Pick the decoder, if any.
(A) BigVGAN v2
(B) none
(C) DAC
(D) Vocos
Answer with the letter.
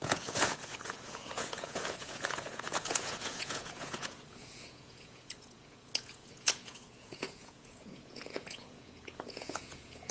D